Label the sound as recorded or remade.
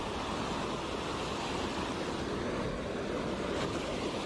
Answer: recorded